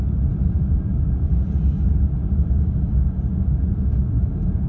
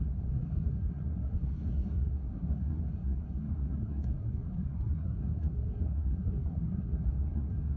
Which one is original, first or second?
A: first